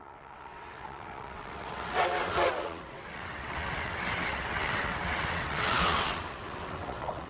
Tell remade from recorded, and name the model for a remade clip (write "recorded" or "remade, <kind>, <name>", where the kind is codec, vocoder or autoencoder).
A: remade, vocoder, WaveNeXt